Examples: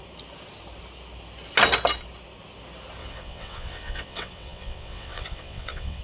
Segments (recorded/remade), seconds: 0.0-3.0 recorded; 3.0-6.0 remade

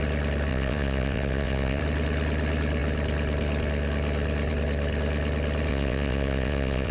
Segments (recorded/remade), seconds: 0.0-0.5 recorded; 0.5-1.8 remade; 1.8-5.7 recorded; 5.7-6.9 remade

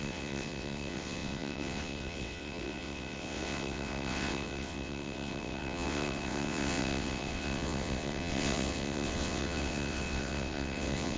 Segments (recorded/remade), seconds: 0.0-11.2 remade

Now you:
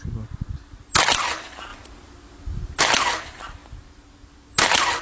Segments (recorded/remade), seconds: 0.0-5.0 recorded